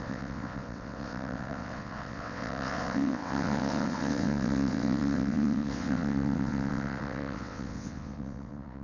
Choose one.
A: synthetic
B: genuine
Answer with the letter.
A